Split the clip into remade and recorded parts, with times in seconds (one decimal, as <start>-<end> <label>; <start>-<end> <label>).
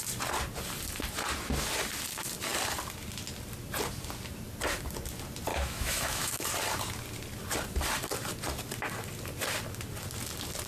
0.0-5.5 recorded; 5.5-6.5 remade; 6.5-10.7 recorded